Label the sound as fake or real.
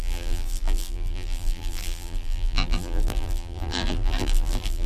fake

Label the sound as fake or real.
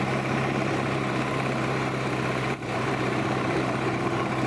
fake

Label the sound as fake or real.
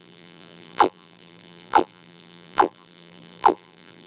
fake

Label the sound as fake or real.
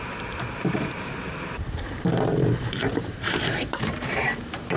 fake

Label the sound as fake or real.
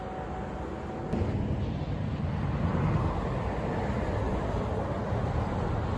real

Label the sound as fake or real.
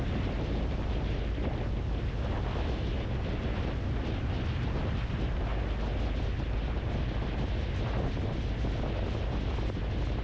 real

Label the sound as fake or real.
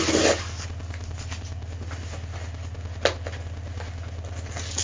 real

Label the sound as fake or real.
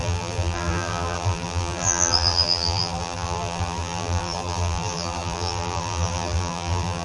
fake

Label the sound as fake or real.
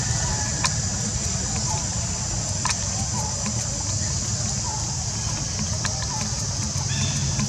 real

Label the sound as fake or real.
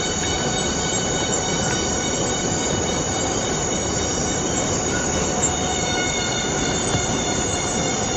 fake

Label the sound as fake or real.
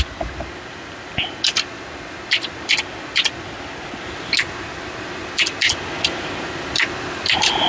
real